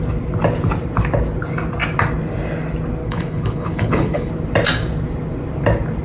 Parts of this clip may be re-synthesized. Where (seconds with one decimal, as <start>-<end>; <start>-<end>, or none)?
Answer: 3.0-4.3